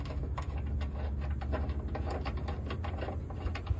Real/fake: real